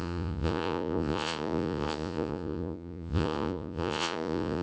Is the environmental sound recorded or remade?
remade